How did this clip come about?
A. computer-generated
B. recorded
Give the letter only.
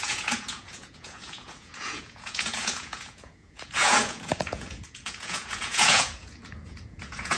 A